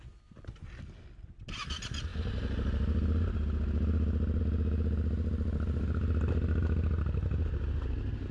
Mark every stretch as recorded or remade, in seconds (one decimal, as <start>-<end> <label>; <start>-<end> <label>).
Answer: 0.0-8.3 recorded